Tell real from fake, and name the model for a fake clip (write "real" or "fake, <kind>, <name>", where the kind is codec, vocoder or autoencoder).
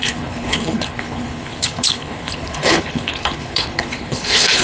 fake, codec, HILCodec